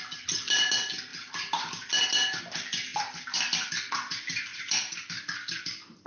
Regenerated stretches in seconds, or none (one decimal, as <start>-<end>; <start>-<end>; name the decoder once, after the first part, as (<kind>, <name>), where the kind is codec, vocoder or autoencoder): none